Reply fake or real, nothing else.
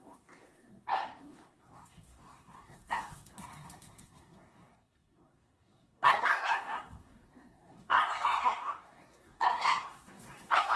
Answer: fake